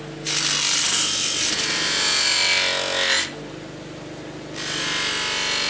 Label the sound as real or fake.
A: real